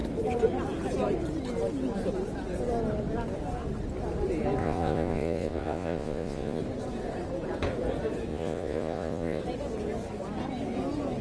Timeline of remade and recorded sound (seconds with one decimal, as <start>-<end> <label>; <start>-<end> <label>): 0.0-4.6 recorded; 4.6-6.6 remade; 6.6-8.3 recorded; 8.3-9.4 remade; 9.4-11.2 recorded

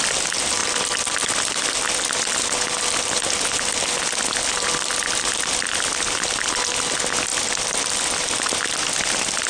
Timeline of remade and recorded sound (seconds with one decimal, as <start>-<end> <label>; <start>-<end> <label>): 0.0-9.5 recorded

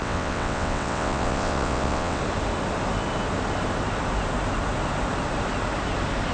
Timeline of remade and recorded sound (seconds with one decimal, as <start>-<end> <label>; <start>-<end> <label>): 0.0-2.2 remade; 2.2-6.3 recorded

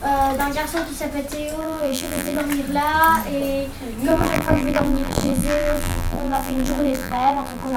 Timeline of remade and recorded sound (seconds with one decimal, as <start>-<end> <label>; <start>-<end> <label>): 0.0-1.6 recorded; 1.6-2.4 remade; 2.4-4.1 recorded; 4.1-7.8 remade

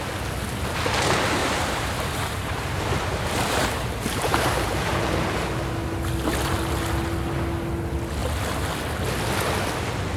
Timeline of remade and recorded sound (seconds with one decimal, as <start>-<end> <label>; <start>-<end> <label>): 0.0-1.4 recorded; 1.4-5.7 remade; 5.7-10.2 recorded

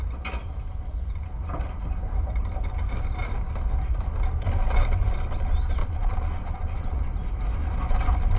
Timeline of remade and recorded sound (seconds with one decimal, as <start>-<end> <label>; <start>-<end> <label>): 0.0-5.8 recorded; 5.8-7.0 remade; 7.0-8.4 recorded

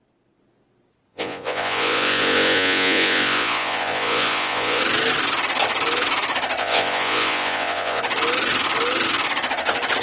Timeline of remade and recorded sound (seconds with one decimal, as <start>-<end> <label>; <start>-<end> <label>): 0.0-1.1 recorded; 1.1-4.8 remade; 4.8-6.6 recorded; 6.6-8.0 remade; 8.0-10.0 recorded

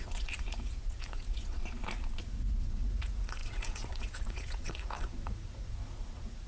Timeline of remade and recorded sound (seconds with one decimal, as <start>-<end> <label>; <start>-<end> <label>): 0.0-1.6 remade; 1.6-2.2 recorded; 2.2-6.5 remade